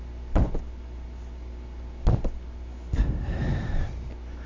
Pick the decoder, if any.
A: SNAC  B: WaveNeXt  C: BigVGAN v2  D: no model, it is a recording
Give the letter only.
D